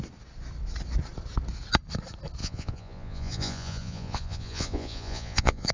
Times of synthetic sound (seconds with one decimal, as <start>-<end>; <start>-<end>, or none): 2.4-5.7